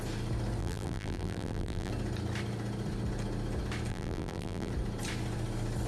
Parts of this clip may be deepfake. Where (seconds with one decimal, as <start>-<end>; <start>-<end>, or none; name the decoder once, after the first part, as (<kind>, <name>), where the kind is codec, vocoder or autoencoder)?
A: 0.6-1.9 (vocoder, BigVGAN v2); 3.9-4.7

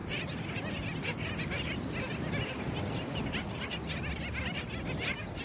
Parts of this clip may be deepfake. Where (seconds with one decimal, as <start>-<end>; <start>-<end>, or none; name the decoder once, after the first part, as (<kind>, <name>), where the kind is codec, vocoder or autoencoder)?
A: none

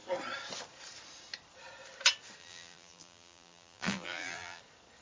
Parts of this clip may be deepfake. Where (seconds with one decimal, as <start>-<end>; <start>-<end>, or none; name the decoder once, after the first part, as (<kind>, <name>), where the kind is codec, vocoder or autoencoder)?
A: 2.4-4.6 (vocoder, BigVGAN v2)

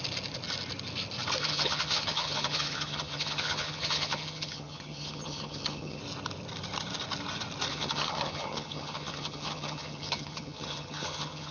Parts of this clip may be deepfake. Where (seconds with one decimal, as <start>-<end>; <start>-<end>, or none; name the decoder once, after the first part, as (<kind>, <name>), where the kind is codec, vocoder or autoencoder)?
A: 1.4-6.0 (vocoder, HiFi-GAN); 7.7-11.5

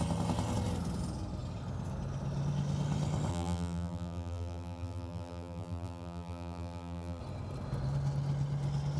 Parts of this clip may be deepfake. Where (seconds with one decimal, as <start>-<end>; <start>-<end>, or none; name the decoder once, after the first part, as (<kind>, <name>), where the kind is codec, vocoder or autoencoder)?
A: 3.3-7.2 (vocoder, BigVGAN v2)

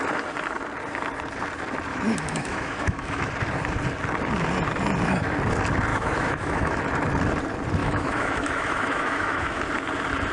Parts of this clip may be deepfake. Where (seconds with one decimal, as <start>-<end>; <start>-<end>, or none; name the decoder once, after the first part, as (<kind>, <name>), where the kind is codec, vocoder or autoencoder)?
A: 1.9-3.3 (autoencoder, DAC-VAE); 5.9-6.8; 7.8-9.6

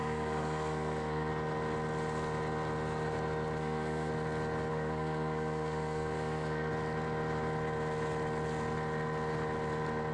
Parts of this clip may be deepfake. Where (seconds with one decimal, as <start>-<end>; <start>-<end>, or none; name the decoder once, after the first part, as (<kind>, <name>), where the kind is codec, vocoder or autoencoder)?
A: 0.0-1.3 (codec, SNAC); 3.6-4.1; 4.7-6.7

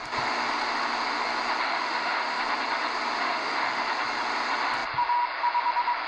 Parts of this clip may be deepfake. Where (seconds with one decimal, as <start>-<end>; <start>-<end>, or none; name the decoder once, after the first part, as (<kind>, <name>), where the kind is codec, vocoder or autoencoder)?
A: 1.7-2.4 (autoencoder, DAC-VAE); 3.2-3.8